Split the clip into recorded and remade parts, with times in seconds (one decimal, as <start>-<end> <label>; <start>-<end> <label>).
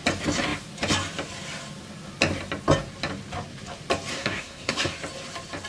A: 0.0-4.1 recorded; 4.1-4.9 remade; 4.9-5.7 recorded